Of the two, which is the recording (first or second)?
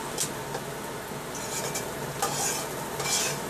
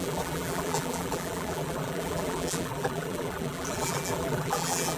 first